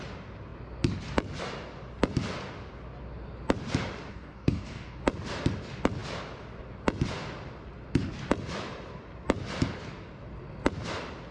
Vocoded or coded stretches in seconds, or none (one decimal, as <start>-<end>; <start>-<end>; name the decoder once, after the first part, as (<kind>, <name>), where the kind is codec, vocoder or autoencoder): 4.1-5.0 (codec, DAC)